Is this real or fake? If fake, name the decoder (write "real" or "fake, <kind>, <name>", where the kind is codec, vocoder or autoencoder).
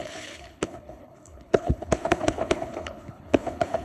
fake, codec, HILCodec